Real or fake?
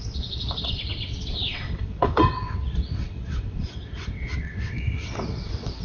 fake